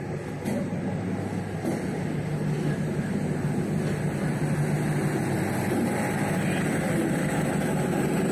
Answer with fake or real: real